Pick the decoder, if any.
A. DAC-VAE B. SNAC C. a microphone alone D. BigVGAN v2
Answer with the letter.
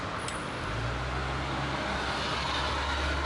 C